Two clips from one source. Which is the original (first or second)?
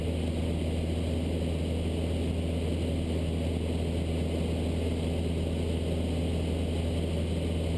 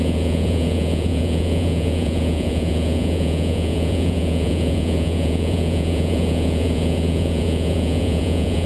first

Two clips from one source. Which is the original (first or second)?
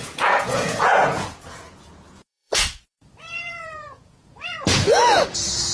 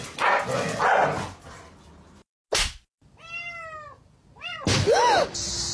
second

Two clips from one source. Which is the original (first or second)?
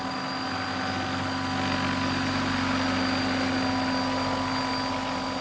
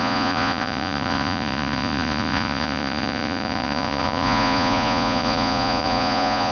first